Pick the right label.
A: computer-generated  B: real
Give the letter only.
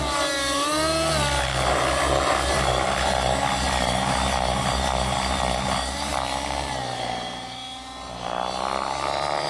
B